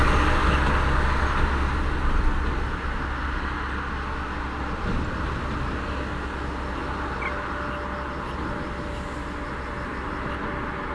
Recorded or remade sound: recorded